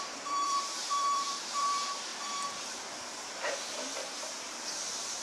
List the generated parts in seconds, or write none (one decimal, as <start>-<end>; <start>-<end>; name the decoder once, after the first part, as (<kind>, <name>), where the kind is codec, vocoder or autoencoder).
0.0-3.6 (vocoder, BigVGAN v2); 4.4-5.2